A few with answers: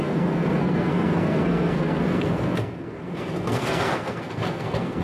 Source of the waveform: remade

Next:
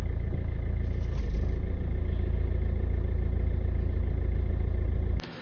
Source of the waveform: recorded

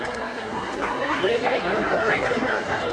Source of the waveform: remade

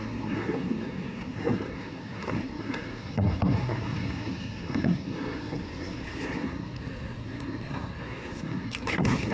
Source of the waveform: remade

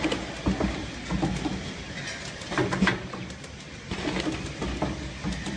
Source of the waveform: recorded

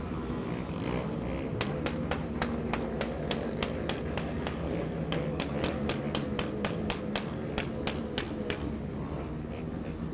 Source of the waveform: recorded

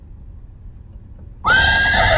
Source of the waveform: recorded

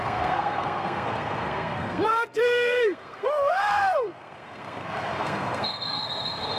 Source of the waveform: remade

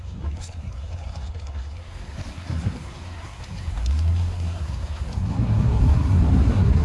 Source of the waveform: remade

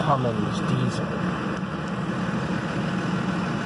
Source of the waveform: recorded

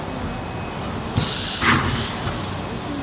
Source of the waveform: recorded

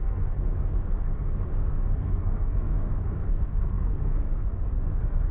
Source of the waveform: remade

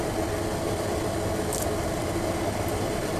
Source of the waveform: recorded